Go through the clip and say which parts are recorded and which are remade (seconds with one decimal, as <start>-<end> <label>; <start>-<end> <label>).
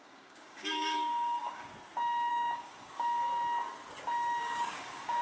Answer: 0.0-1.7 remade; 1.7-2.3 recorded; 2.3-3.3 remade; 3.3-4.4 recorded; 4.4-5.2 remade